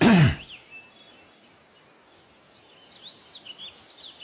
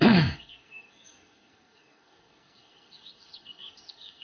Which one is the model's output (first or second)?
second